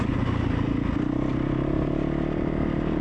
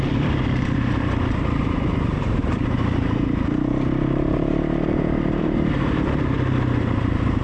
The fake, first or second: second